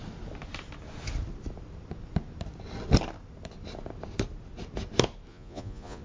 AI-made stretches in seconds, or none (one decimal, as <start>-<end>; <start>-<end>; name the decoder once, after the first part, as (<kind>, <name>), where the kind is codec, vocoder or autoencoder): 5.3-6.0 (vocoder, Vocos)